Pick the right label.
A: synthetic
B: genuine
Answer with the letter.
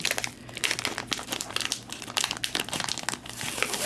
B